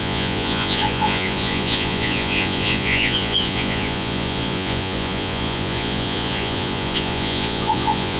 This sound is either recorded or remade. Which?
remade